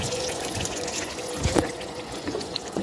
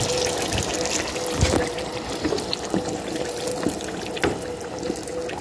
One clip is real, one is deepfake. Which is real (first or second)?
second